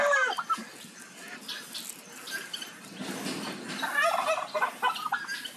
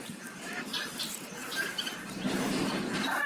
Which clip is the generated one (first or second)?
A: second